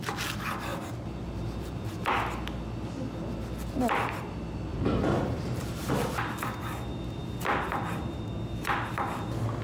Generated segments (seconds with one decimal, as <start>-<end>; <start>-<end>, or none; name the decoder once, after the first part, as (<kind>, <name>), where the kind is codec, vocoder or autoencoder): 0.7-2.0 (vocoder, BigVGAN v2); 4.7-5.9